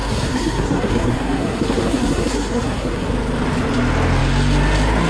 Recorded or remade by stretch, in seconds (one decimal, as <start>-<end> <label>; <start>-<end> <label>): 0.0-3.1 remade; 3.1-5.1 recorded